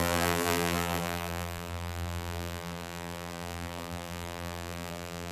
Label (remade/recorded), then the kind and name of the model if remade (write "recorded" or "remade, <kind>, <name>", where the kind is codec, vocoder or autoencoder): remade, vocoder, BigVGAN v2